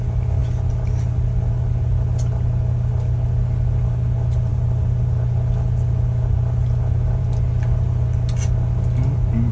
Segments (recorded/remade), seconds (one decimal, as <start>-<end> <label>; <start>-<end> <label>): 0.0-9.5 recorded